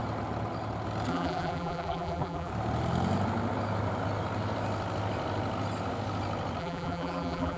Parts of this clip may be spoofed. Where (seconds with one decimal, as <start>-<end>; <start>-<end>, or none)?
1.1-2.5; 6.6-7.6